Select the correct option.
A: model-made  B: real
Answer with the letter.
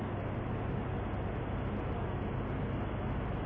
B